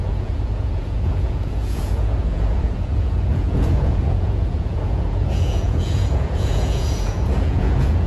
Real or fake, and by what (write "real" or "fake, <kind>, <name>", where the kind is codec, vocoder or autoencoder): fake, vocoder, Vocos